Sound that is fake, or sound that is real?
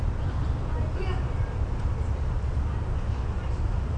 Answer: real